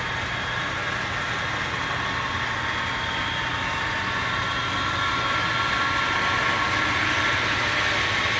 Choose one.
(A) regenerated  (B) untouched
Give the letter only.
B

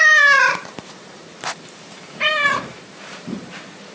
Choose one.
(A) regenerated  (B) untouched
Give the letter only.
A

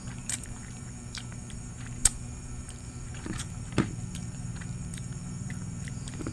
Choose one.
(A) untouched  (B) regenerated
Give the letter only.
B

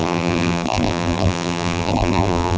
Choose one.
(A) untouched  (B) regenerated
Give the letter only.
B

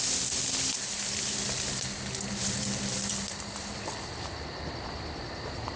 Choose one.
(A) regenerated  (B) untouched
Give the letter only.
B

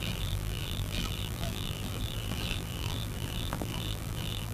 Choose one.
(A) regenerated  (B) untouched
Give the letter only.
A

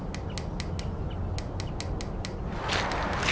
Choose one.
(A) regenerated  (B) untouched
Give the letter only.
B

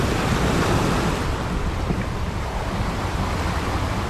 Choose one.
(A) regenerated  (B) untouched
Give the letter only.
A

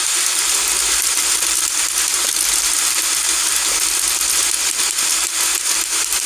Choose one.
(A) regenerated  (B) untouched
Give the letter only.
A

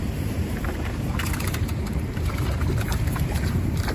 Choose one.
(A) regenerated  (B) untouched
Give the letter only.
A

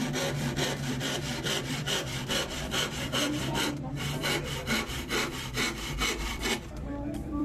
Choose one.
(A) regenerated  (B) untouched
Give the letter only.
A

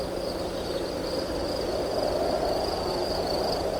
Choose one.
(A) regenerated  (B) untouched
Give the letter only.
B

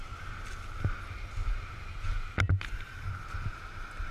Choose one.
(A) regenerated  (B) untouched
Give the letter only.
B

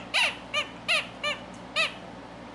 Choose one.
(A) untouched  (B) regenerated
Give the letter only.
A